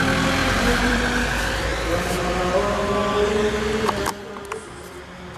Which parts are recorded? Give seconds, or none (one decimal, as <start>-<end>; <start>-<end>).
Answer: 0.0-0.4; 1.0-5.4